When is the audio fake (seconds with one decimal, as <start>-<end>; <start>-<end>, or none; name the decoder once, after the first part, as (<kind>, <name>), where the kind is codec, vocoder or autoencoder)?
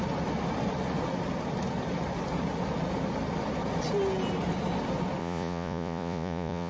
5.2-6.7 (vocoder, Vocos)